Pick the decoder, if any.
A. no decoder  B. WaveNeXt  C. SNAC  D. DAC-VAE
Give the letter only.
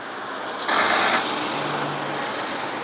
A